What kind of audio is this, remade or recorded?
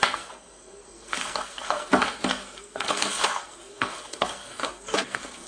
remade